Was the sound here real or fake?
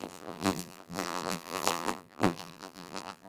fake